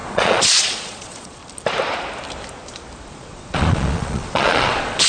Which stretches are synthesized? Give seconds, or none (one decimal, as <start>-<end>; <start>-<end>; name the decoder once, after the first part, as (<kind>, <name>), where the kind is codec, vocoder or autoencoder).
0.0-1.4 (vocoder, Vocos); 3.1-5.1